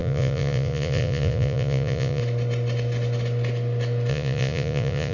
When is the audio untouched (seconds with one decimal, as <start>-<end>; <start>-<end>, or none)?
2.2-4.1